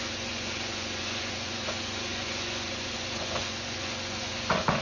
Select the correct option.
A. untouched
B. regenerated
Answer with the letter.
B